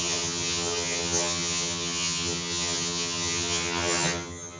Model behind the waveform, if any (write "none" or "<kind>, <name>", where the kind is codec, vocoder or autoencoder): vocoder, HiFi-GAN